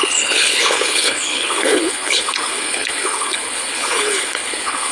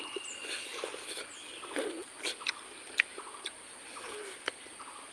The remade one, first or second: first